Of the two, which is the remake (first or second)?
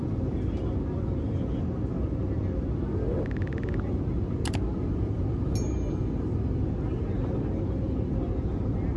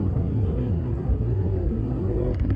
second